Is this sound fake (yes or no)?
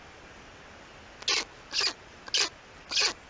no